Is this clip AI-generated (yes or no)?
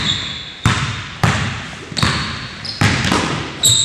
no